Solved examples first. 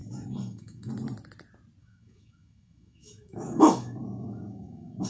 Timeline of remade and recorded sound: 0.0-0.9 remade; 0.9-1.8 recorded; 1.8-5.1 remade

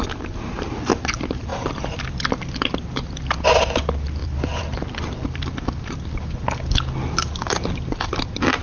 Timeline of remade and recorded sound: 0.0-1.5 recorded; 1.5-3.1 remade; 3.1-4.2 recorded; 4.2-5.6 remade; 5.6-8.6 recorded

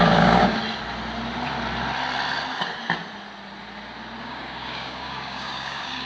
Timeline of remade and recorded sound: 0.0-0.6 remade; 0.6-4.2 recorded; 4.2-6.0 remade

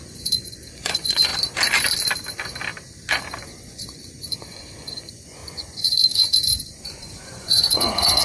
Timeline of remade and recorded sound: 0.0-1.3 remade; 1.3-3.4 recorded; 3.4-8.2 remade

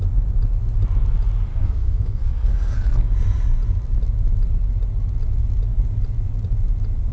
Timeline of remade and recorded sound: 0.0-1.5 recorded; 1.5-3.1 remade; 3.1-7.1 recorded

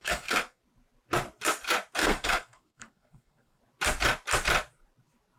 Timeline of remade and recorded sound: 0.0-0.6 remade; 0.6-2.0 recorded; 2.0-3.6 remade; 3.6-5.4 recorded

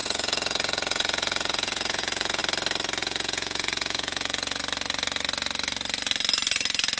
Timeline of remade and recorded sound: 0.0-2.4 remade; 2.4-3.0 recorded; 3.0-4.6 remade; 4.6-7.0 recorded

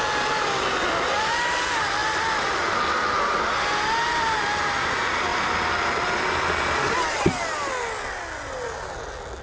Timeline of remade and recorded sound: 0.0-9.4 recorded